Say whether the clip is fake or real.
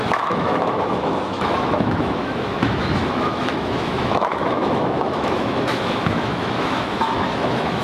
fake